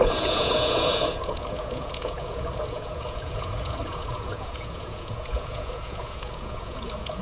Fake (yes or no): yes